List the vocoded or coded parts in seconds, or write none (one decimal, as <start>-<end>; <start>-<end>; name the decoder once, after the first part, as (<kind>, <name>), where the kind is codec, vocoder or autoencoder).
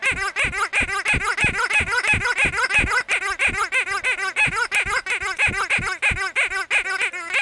none